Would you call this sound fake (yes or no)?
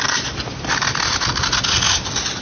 no